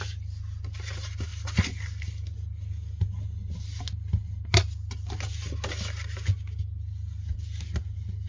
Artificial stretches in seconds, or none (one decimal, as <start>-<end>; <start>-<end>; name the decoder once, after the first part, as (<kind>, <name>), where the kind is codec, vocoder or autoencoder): none